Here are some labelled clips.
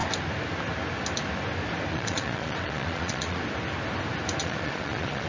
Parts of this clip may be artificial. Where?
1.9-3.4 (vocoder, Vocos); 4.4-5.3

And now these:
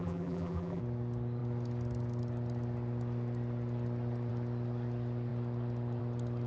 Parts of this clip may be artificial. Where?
0.0-0.8 (vocoder, BigVGAN v2)

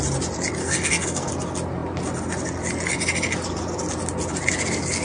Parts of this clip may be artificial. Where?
0.6-1.3 (codec, SNAC)

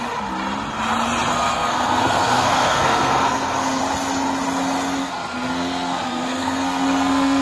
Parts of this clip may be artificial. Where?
1.3-3.8 (codec, SNAC); 5.0-7.4

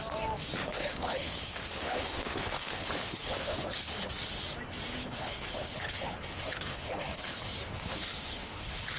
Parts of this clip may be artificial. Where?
0.6-4.1 (codec, HILCodec); 5.0-9.0

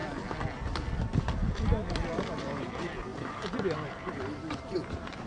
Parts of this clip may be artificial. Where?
3.1-5.3 (vocoder, BigVGAN v2)